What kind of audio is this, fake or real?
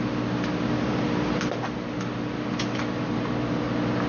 real